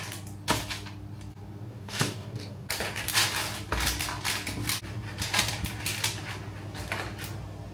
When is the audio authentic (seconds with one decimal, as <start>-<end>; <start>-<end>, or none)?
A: 0.0-1.7; 2.7-7.7